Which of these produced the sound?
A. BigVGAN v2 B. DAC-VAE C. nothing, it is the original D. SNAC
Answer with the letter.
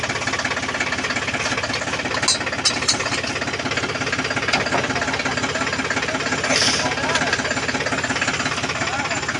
C